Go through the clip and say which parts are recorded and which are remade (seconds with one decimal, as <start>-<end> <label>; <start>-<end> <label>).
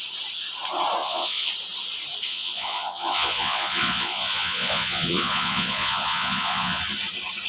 0.0-1.0 recorded; 1.0-1.5 remade; 1.5-2.3 recorded; 2.3-6.8 remade; 6.8-7.5 recorded